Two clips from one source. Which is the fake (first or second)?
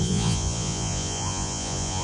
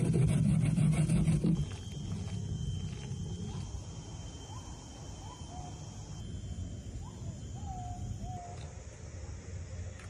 first